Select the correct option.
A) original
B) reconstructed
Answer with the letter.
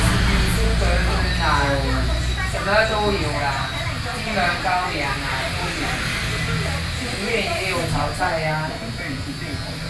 A